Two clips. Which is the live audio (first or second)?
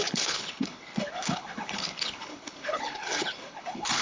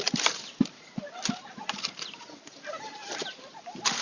second